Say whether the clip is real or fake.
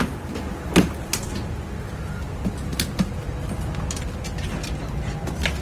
real